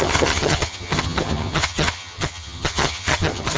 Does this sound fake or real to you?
fake